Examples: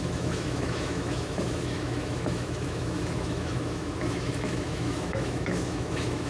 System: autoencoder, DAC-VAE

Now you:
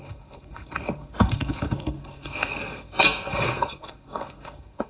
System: codec, SNAC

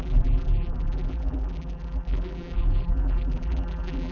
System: vocoder, BigVGAN v2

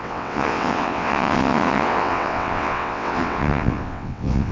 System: vocoder, WaveNeXt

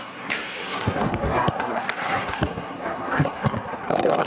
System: codec, SNAC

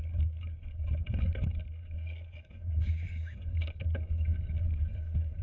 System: codec, DAC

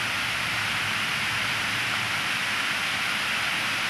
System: none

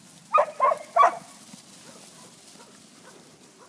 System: none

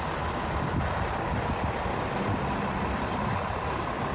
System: none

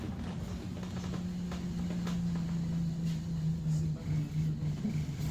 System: none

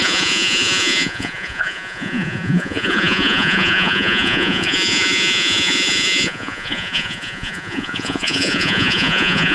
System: vocoder, Vocos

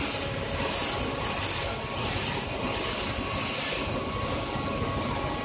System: none